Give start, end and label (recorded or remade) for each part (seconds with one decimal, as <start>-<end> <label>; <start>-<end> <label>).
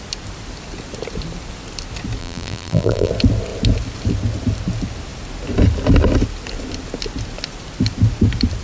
0.0-2.2 recorded; 2.2-3.1 remade; 3.1-8.6 recorded